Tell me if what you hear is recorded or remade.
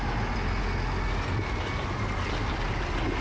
recorded